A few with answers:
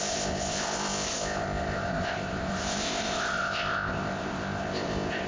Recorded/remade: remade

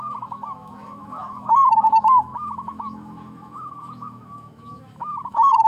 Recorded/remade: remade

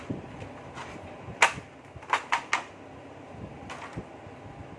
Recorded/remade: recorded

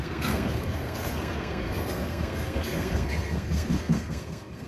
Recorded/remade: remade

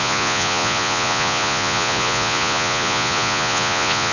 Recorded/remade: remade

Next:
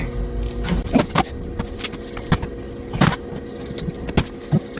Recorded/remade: recorded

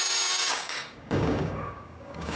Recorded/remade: remade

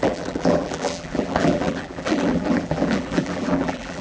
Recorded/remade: remade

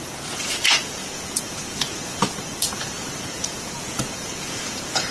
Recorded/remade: remade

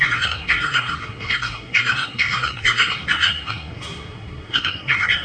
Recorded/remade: remade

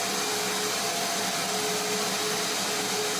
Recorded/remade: recorded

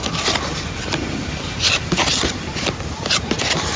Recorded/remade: recorded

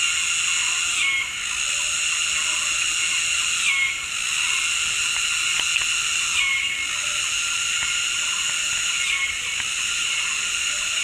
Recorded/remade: recorded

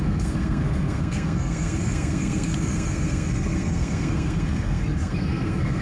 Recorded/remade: remade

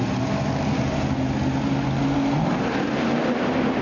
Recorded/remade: recorded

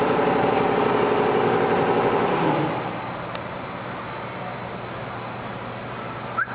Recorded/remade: recorded